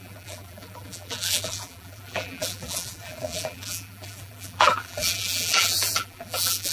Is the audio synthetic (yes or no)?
yes